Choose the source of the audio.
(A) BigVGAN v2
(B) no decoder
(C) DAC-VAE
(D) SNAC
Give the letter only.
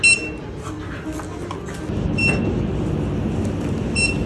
B